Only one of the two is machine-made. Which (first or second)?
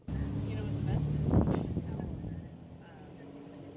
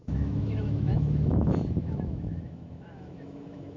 second